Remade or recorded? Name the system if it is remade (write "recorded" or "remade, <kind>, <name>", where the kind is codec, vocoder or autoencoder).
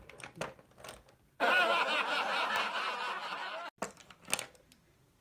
recorded